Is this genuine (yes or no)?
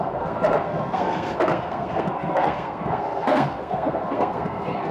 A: no